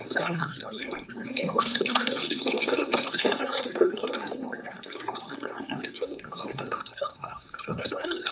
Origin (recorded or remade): remade